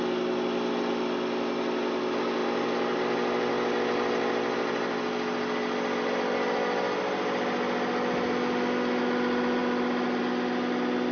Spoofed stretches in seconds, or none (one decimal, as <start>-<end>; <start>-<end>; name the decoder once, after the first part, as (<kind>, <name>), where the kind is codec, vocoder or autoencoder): none